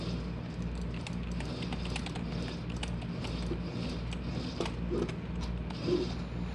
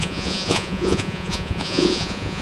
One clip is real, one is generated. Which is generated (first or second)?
second